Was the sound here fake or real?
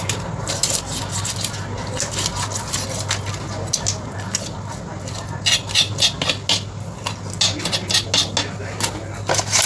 real